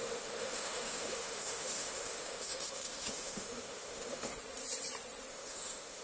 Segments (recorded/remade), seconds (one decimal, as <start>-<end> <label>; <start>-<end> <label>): 0.0-4.3 remade; 4.3-5.3 recorded; 5.3-6.0 remade